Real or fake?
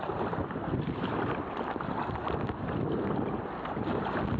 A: real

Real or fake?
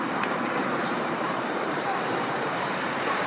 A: fake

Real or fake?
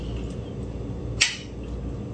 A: real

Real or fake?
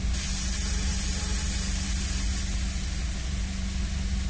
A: real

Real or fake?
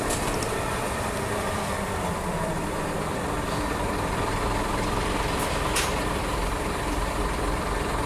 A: fake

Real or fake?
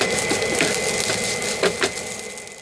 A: real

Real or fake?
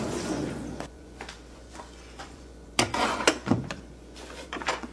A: fake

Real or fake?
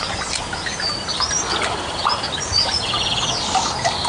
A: real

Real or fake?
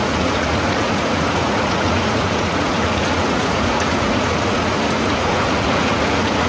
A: fake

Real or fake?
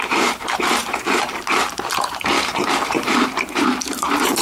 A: fake